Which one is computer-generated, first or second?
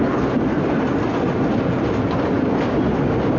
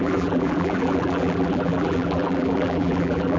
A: second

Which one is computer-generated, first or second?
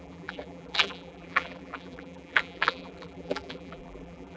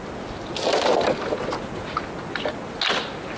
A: first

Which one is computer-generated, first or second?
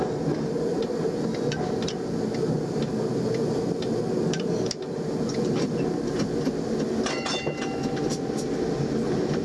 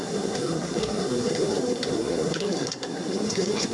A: second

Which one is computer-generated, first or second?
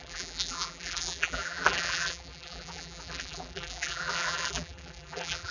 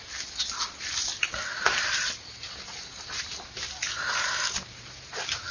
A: first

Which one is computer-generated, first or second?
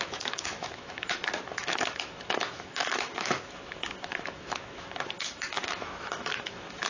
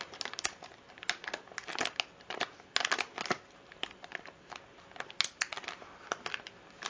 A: first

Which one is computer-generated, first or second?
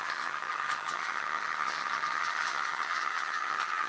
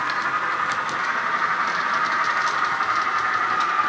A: first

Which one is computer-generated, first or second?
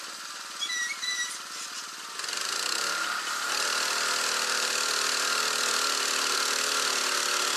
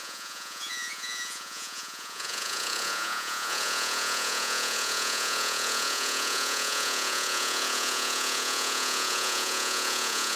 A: second